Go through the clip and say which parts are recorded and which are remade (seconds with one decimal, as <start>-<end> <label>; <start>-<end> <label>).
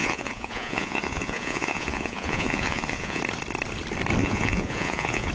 0.0-3.2 remade; 3.2-4.2 recorded; 4.2-5.3 remade